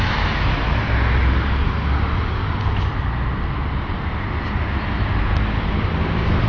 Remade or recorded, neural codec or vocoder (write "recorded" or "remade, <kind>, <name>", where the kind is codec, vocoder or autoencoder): recorded